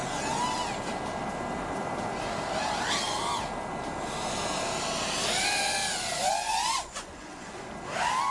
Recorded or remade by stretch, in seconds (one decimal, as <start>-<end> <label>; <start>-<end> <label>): 0.0-6.2 recorded; 6.2-7.7 remade; 7.7-8.3 recorded